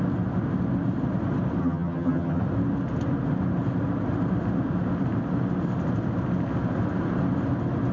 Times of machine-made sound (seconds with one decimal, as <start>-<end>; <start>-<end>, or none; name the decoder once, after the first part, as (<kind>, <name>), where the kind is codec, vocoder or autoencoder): 1.6-2.4 (vocoder, HiFi-GAN)